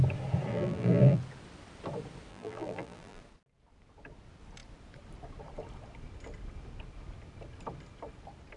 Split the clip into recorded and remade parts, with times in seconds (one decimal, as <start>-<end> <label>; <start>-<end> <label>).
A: 0.0-0.5 recorded; 0.5-1.2 remade; 1.2-2.3 recorded; 2.3-3.2 remade; 3.2-8.6 recorded